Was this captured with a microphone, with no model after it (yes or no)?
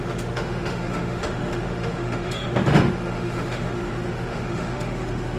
no